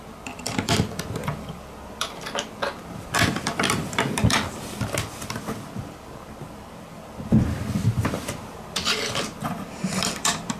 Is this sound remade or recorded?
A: remade